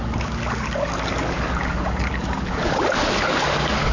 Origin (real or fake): fake